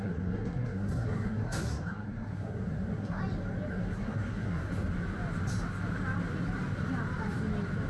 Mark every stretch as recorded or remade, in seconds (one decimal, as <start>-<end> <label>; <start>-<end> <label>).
0.0-3.2 remade; 3.2-3.7 recorded; 3.7-4.7 remade; 4.7-7.9 recorded